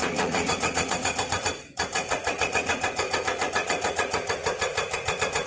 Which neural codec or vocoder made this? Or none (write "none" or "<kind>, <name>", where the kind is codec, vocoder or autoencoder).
vocoder, Vocos